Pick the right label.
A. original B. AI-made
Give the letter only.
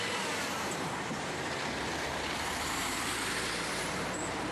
B